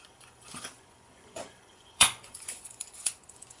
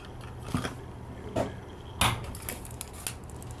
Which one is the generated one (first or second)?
first